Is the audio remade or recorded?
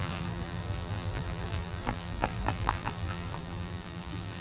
remade